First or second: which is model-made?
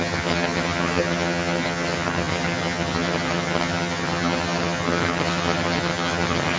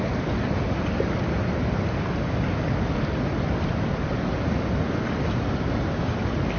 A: first